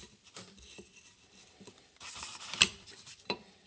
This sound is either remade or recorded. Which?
remade